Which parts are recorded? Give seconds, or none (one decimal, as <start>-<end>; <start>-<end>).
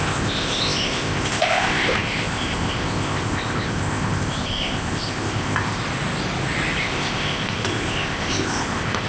5.8-6.8